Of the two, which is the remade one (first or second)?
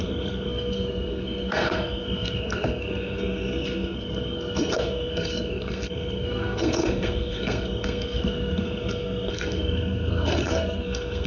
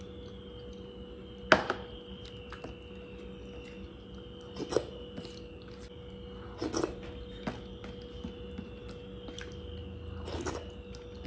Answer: first